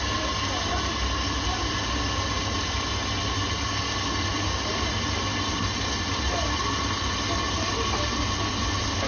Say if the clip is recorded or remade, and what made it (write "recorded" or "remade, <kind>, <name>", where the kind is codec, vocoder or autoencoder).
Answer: recorded